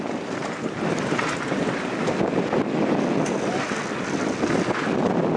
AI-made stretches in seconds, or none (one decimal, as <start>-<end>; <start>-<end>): none